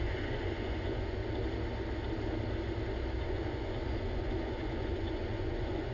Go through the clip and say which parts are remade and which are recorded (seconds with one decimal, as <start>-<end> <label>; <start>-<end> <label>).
0.0-1.2 remade; 1.2-3.2 recorded; 3.2-5.9 remade